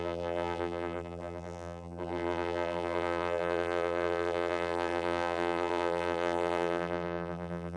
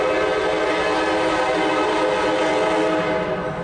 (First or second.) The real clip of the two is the second